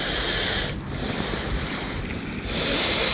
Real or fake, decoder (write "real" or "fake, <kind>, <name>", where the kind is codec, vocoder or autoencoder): real